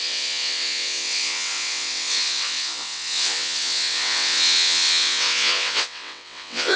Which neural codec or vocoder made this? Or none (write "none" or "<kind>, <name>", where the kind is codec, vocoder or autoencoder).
vocoder, WaveNeXt